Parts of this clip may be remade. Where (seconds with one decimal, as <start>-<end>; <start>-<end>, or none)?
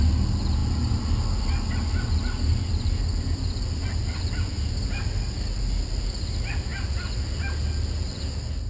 none